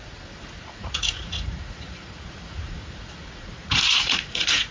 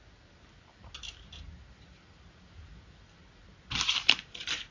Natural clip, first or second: second